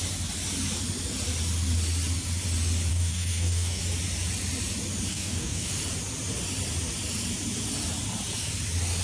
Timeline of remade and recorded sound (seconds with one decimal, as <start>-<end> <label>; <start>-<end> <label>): 0.0-2.9 recorded; 2.9-3.8 remade; 3.8-5.1 recorded; 5.1-5.7 remade; 5.7-9.0 recorded